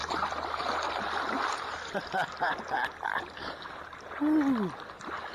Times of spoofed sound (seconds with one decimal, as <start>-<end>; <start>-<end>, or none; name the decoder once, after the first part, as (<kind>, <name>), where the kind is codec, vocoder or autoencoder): 0.0-2.5 (vocoder, BigVGAN v2)